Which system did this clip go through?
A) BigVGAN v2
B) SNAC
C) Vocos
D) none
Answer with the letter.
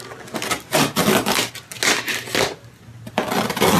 D